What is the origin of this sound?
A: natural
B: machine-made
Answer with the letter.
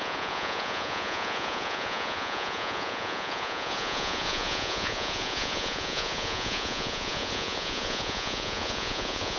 B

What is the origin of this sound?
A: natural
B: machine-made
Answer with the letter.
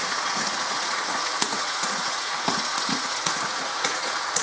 B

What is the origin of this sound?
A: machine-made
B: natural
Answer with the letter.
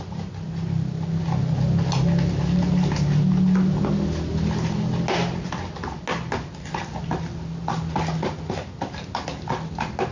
B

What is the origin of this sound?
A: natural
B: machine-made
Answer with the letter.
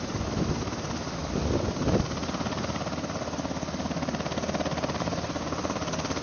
A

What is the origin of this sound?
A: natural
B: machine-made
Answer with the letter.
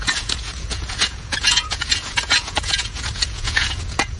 B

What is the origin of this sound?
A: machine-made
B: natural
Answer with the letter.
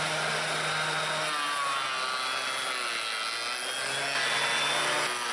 B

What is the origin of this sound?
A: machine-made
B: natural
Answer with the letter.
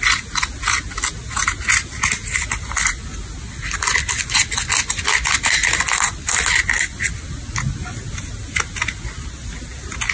B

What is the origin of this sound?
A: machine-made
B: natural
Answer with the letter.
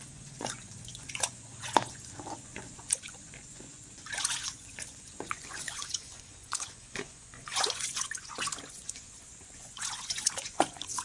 A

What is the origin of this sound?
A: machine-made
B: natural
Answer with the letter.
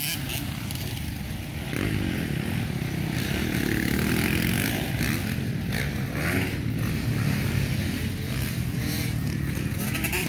B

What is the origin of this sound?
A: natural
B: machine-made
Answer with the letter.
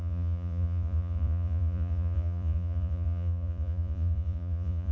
B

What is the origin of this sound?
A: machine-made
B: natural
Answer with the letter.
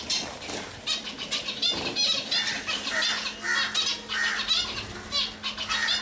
B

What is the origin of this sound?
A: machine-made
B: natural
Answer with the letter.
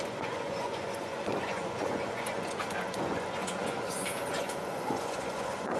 A